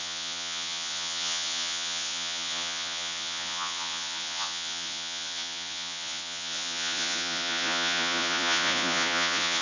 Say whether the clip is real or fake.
fake